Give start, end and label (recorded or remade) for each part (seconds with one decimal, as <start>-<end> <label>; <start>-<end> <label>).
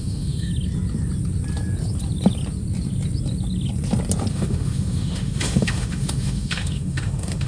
0.0-0.5 remade; 0.5-4.3 recorded; 4.3-7.5 remade